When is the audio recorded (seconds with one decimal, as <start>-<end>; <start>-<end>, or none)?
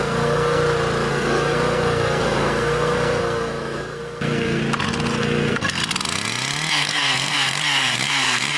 0.6-1.1; 4.6-5.2; 5.8-6.7